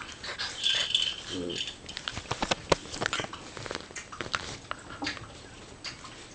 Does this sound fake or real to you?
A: real